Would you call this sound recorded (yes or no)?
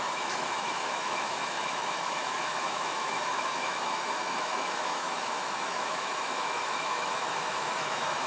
no